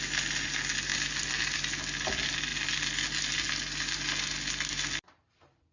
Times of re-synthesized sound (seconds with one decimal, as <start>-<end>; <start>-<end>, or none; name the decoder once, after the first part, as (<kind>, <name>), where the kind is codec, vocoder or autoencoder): none